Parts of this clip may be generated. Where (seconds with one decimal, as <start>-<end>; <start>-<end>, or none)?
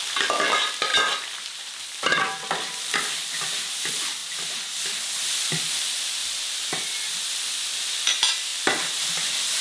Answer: 0.0-0.9; 1.8-4.2; 4.9-6.2; 7.8-9.6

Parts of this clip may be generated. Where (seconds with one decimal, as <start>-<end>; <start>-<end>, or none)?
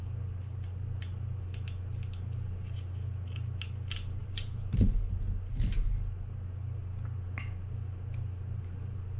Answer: 4.2-5.1